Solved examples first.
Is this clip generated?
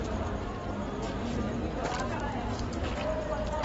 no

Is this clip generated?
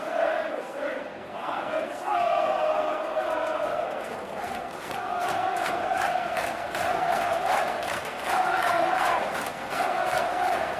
yes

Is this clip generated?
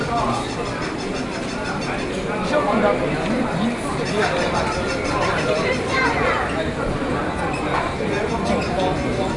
no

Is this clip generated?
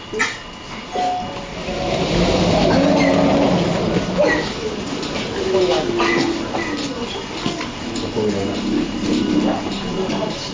no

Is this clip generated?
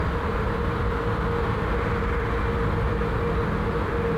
no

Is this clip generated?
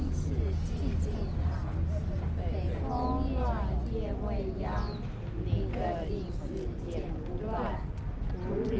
no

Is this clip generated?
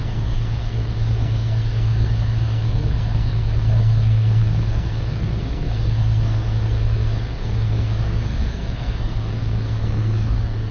yes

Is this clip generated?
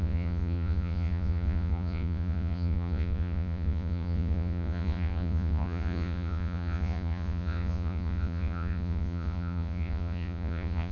yes